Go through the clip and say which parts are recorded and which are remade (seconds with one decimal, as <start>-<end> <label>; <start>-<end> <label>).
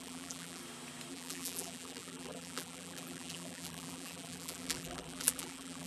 0.0-0.6 remade; 0.6-1.1 recorded; 1.1-5.9 remade